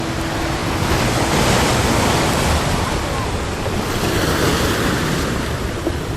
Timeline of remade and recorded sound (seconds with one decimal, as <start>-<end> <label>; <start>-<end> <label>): 0.0-6.2 recorded